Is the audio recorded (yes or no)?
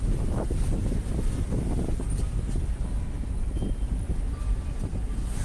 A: yes